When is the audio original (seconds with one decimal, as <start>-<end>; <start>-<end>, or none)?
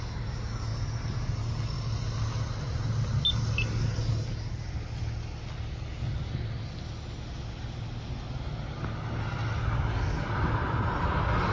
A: 0.0-11.5